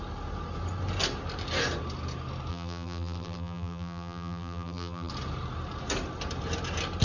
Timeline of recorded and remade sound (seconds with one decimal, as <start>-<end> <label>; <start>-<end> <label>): 0.0-2.5 recorded; 2.5-5.1 remade; 5.1-7.0 recorded